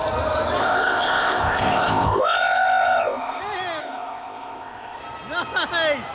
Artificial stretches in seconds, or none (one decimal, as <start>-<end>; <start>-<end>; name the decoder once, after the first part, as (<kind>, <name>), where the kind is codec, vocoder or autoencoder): 0.6-3.4 (codec, ZipCodec); 3.8-5.0